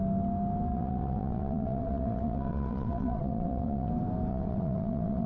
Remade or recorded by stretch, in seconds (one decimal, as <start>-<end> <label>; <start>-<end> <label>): 0.0-0.7 recorded; 0.7-3.9 remade; 3.9-4.3 recorded; 4.3-5.3 remade